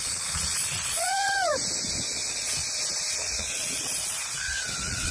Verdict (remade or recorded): remade